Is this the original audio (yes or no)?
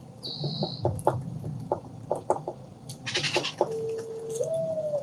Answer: yes